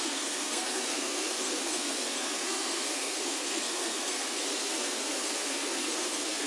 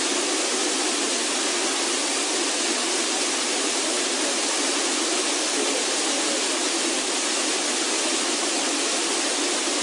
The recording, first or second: second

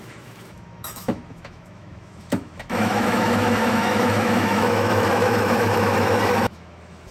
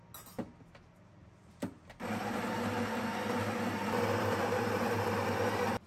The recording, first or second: second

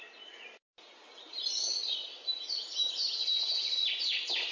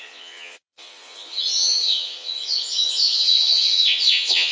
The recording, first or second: first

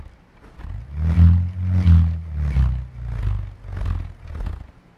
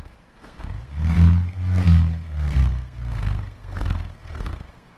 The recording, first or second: first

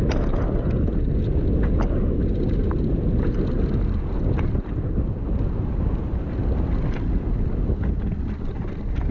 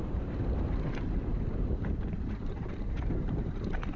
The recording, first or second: first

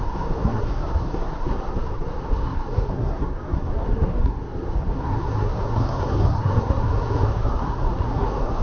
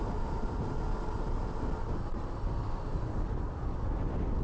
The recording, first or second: second